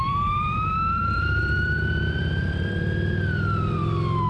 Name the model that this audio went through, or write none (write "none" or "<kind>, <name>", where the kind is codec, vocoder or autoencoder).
vocoder, BigVGAN v2